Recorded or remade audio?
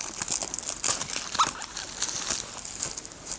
recorded